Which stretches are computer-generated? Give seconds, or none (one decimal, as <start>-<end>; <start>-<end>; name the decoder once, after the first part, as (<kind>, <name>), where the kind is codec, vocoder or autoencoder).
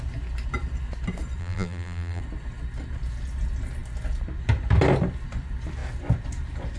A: 1.4-2.2 (vocoder, BigVGAN v2)